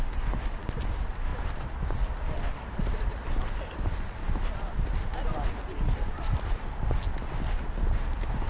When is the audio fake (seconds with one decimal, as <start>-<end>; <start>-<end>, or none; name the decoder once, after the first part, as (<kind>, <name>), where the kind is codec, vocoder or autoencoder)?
none